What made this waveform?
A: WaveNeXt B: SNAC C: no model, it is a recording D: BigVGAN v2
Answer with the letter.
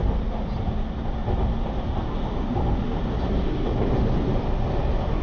C